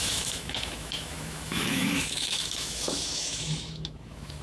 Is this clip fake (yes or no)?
yes